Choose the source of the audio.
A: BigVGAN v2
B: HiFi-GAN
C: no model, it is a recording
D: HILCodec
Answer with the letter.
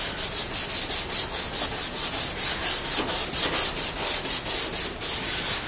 C